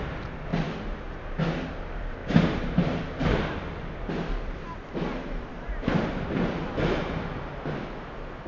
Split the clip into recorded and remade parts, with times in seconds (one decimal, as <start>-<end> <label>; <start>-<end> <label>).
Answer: 0.0-2.2 recorded; 2.2-3.0 remade; 3.0-5.5 recorded; 5.5-6.0 remade; 6.0-8.5 recorded